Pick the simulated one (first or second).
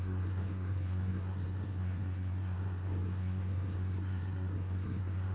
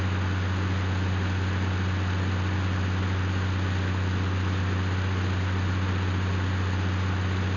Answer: first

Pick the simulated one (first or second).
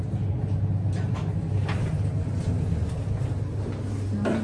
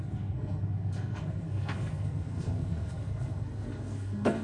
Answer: second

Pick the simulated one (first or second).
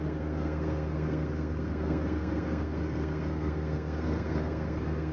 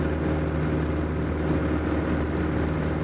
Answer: first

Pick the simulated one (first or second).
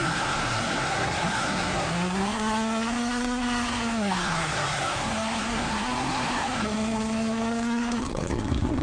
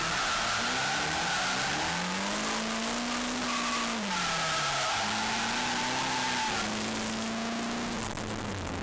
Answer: first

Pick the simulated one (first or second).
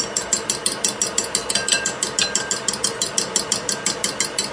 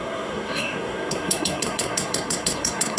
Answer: second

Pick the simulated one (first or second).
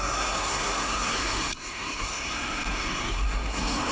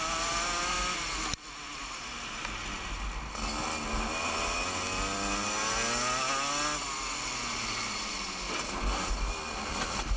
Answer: first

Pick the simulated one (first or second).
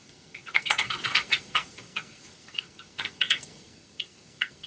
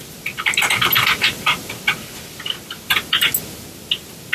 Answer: first